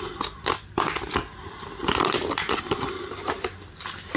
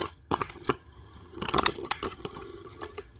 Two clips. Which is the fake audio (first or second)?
second